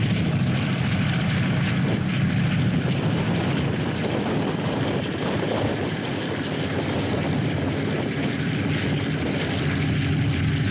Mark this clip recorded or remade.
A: remade